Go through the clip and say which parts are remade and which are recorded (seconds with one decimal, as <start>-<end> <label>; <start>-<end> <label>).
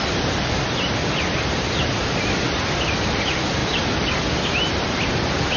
0.0-3.6 remade; 3.6-4.2 recorded; 4.2-5.6 remade